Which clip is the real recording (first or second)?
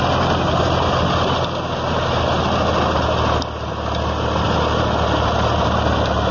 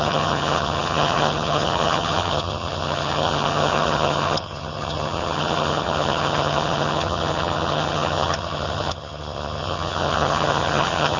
first